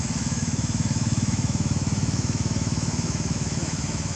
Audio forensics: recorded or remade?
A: remade